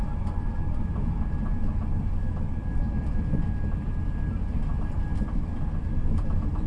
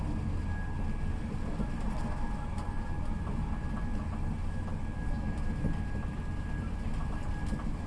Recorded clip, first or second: second